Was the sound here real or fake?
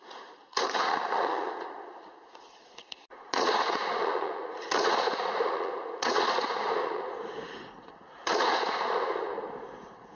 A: fake